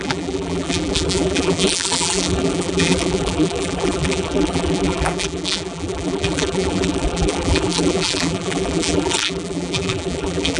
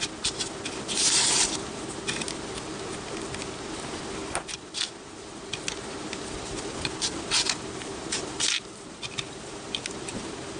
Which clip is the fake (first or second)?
first